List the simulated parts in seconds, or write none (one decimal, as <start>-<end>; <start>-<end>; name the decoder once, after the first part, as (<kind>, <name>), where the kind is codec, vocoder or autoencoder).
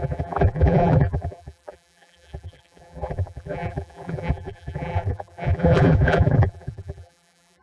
0.0-7.6 (vocoder, BigVGAN v2)